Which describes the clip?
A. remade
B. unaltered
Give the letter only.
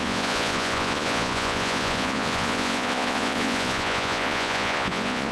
A